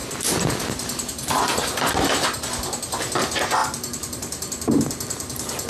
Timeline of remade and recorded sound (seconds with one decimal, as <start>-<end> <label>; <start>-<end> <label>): 0.0-1.9 remade; 1.9-3.6 recorded; 3.6-5.7 remade